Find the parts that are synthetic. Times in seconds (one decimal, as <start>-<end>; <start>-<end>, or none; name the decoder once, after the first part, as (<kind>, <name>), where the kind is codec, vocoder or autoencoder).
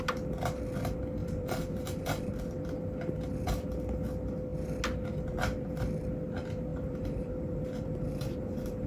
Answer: 1.2-2.3 (vocoder, BigVGAN v2); 6.7-8.9